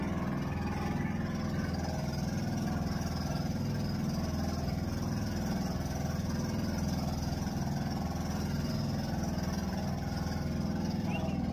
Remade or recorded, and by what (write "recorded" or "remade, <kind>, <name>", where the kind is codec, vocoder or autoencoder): recorded